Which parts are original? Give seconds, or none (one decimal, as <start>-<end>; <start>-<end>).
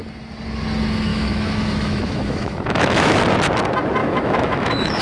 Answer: 0.0-1.1; 3.2-4.0